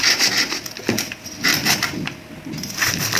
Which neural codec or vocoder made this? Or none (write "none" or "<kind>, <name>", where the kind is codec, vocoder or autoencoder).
none